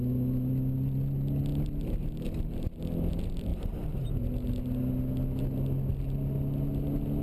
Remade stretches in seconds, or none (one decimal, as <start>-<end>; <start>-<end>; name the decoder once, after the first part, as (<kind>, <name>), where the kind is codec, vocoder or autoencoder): 3.5-4.2 (vocoder, BigVGAN v2)